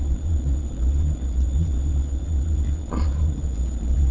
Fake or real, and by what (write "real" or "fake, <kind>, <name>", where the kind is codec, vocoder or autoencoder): fake, vocoder, Vocos